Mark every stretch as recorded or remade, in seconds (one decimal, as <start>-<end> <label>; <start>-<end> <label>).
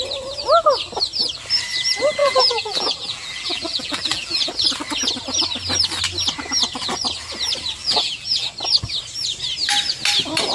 0.0-2.2 recorded; 2.2-4.5 remade; 4.5-7.8 recorded; 7.8-8.5 remade; 8.5-10.5 recorded